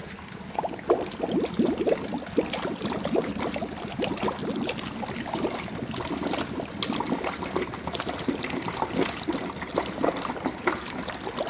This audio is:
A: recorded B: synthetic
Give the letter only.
A